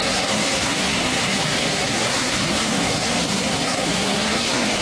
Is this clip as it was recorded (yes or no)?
no